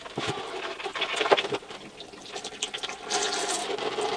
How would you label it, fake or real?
real